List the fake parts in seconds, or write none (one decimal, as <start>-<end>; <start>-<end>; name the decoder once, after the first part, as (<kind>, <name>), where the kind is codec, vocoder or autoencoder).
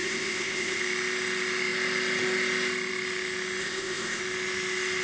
0.0-0.8 (codec, ZipCodec); 3.6-4.2